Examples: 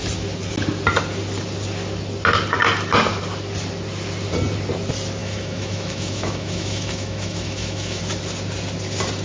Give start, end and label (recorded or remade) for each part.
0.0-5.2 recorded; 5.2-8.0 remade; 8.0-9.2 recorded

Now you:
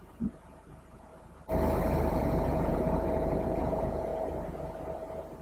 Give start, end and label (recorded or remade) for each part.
0.0-1.1 remade; 1.1-2.1 recorded; 2.1-4.1 remade; 4.1-5.4 recorded

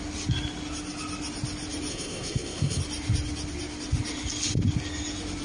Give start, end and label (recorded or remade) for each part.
0.0-1.9 recorded; 1.9-2.8 remade; 2.8-5.4 recorded